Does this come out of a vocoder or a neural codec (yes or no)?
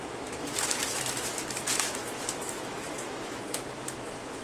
yes